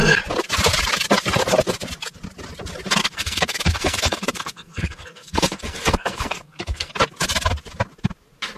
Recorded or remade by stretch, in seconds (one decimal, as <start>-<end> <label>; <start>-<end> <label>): 0.0-3.0 recorded; 3.0-6.9 remade; 6.9-8.6 recorded